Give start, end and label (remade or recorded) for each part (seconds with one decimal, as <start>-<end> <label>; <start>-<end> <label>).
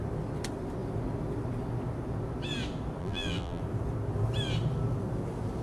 0.0-3.0 recorded; 3.0-3.6 remade; 3.6-5.6 recorded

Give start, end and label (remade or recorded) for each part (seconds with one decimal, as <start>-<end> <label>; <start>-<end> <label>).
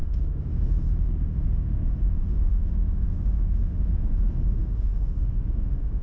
0.0-6.0 remade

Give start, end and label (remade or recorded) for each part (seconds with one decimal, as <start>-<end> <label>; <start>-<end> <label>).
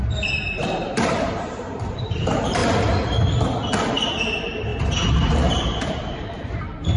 0.0-2.6 remade; 2.6-3.9 recorded; 3.9-7.0 remade